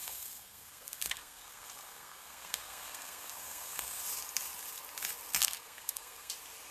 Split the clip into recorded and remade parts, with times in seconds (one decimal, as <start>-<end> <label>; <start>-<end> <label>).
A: 0.0-4.0 remade; 4.0-5.3 recorded; 5.3-6.3 remade; 6.3-6.7 recorded

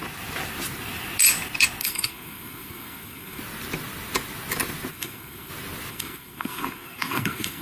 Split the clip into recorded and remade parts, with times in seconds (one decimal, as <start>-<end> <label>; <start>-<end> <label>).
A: 0.0-1.8 recorded; 1.8-3.4 remade; 3.4-4.9 recorded; 4.9-5.5 remade; 5.5-5.9 recorded; 5.9-7.6 remade

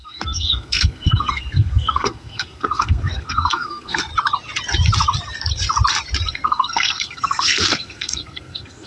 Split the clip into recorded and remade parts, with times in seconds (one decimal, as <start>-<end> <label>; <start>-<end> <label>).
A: 0.0-4.1 remade; 4.1-6.3 recorded; 6.3-8.9 remade

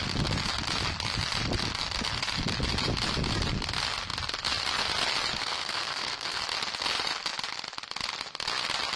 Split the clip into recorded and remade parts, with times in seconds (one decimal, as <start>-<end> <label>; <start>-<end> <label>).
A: 0.0-5.4 recorded; 5.4-6.4 remade; 6.4-9.0 recorded

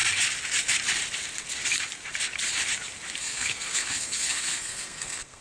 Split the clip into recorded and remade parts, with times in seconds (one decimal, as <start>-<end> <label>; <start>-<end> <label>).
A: 0.0-3.2 recorded; 3.2-5.4 remade

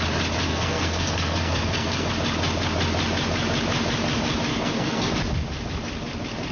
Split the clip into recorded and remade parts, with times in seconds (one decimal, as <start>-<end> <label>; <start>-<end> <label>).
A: 0.0-0.5 recorded; 0.5-2.1 remade; 2.1-4.5 recorded; 4.5-5.1 remade; 5.1-6.5 recorded

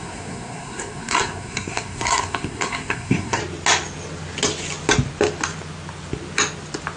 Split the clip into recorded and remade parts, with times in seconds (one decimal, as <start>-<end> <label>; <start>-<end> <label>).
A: 0.0-3.4 remade; 3.4-7.0 recorded

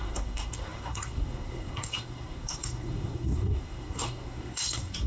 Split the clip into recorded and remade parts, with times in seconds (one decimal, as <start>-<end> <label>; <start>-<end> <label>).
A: 0.0-5.1 remade